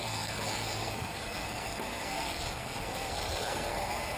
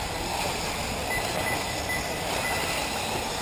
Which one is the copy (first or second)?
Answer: first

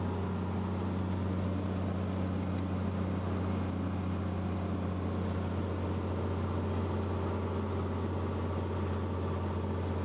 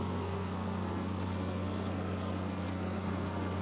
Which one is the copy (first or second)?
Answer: second